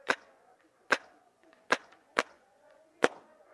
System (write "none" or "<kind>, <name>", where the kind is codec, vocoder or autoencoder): vocoder, Vocos